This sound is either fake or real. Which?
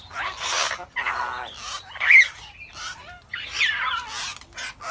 real